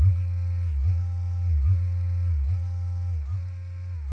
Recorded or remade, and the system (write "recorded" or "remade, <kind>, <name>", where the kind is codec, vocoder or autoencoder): recorded